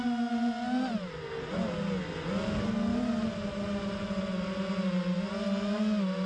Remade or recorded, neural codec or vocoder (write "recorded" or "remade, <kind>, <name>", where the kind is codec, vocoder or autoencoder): recorded